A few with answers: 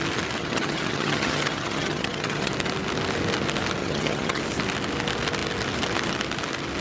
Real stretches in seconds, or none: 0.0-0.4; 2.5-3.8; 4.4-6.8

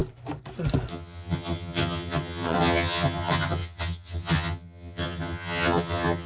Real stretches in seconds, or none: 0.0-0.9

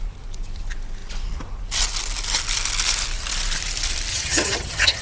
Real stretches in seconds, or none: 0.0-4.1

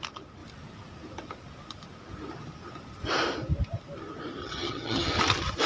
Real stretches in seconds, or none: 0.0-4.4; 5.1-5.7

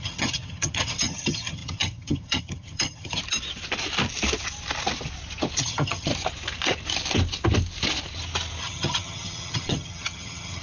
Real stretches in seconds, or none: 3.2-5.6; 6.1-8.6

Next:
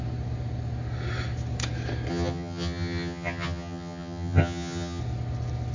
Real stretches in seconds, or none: 0.0-2.1; 5.0-5.7

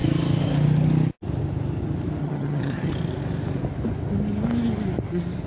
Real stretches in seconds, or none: 0.0-2.2; 2.9-5.5